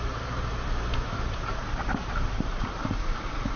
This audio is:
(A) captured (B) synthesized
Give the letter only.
B